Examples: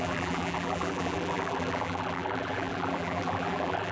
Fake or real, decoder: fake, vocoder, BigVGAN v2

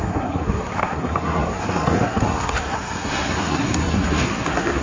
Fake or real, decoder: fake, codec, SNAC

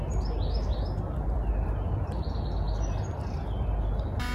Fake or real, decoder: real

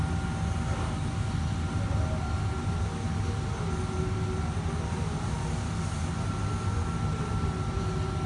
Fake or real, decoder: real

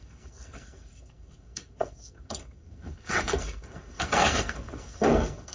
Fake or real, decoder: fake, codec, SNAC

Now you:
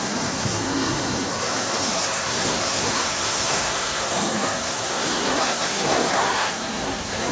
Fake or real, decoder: fake, codec, SNAC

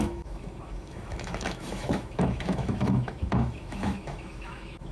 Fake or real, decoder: fake, autoencoder, DAC-VAE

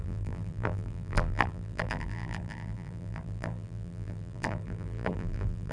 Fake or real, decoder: fake, vocoder, BigVGAN v2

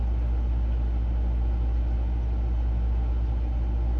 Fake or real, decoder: real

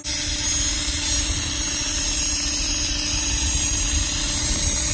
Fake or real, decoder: real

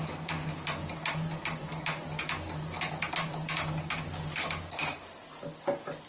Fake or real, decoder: real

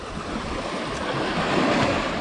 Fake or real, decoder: real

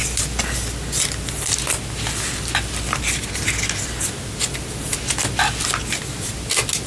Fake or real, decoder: real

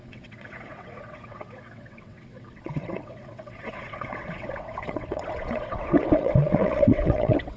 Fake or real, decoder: fake, vocoder, WaveNeXt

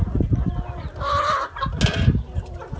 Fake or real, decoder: real